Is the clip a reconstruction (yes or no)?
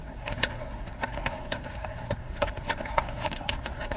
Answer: yes